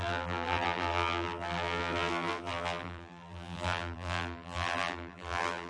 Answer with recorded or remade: remade